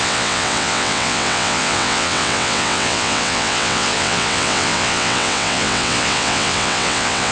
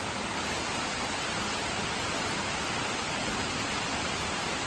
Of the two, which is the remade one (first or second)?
first